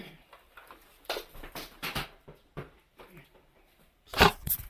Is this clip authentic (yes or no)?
no